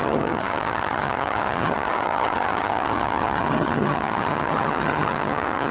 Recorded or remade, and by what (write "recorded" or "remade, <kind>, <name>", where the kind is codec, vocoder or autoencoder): remade, vocoder, HiFi-GAN